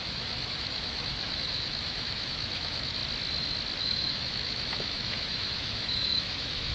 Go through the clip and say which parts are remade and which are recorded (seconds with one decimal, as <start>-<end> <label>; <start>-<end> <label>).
0.0-3.0 remade; 3.0-3.8 recorded; 3.8-6.7 remade